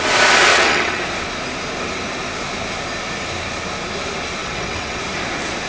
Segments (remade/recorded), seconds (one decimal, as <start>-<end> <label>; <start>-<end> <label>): 0.0-0.5 recorded; 0.5-1.0 remade; 1.0-4.4 recorded; 4.4-5.0 remade; 5.0-5.7 recorded